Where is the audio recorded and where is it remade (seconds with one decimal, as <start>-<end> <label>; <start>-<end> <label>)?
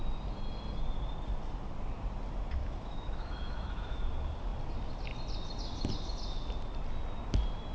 0.0-2.6 recorded; 2.6-4.0 remade; 4.0-7.7 recorded